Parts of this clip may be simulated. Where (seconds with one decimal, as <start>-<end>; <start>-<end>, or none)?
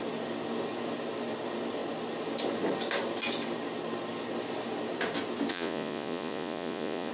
5.5-7.1